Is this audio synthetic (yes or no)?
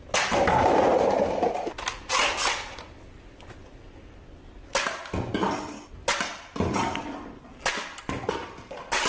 no